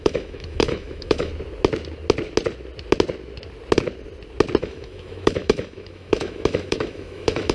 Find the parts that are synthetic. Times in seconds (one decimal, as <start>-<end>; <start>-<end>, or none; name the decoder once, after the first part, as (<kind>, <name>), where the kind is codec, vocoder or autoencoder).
0.0-1.3 (autoencoder, DAC-VAE); 4.6-7.5